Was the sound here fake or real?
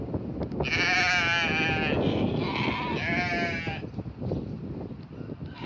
real